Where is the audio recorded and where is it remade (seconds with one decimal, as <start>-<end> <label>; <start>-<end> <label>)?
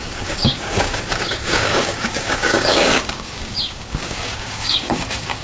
0.0-5.4 remade